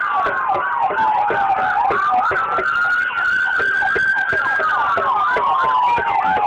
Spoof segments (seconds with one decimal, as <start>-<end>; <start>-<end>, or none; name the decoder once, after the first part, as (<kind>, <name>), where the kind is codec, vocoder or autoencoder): 4.1-4.6 (autoencoder, DAC-VAE)